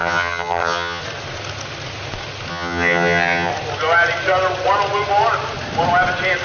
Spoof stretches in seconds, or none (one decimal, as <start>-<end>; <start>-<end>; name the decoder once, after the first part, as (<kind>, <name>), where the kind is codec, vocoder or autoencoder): 0.0-1.0 (vocoder, HiFi-GAN); 2.5-3.5